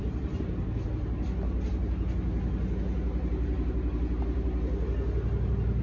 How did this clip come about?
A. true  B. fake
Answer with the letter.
A